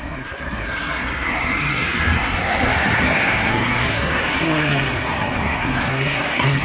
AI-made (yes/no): yes